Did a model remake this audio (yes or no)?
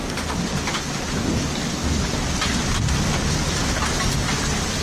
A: no